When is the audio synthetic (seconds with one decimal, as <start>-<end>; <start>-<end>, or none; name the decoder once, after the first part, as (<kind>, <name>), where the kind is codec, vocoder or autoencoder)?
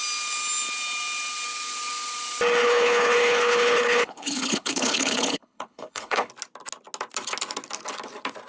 2.6-6.3 (codec, HILCodec)